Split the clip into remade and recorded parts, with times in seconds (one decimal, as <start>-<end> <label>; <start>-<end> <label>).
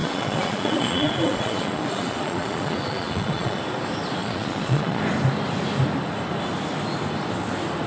0.0-3.6 remade; 3.6-4.2 recorded; 4.2-5.0 remade; 5.0-7.9 recorded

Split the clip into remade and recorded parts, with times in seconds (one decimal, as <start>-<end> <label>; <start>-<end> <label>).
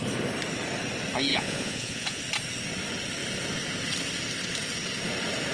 0.0-1.3 recorded; 1.3-2.2 remade; 2.2-5.5 recorded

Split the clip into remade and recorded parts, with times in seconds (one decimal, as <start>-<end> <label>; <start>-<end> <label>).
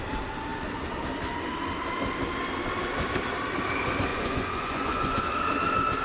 0.0-4.1 recorded; 4.1-5.2 remade; 5.2-6.0 recorded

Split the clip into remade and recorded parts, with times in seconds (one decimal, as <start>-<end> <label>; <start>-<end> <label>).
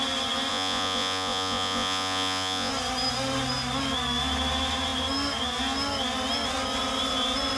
0.0-0.5 recorded; 0.5-2.7 remade; 2.7-7.6 recorded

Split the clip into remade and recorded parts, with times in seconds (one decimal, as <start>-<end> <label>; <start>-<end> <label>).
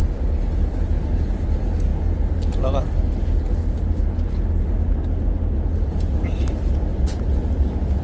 0.0-8.0 recorded